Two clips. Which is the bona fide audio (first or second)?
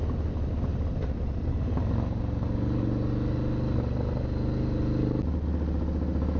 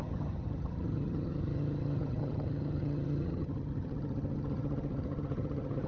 first